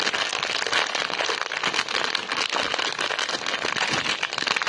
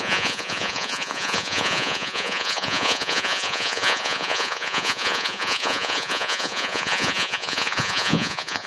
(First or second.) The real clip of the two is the first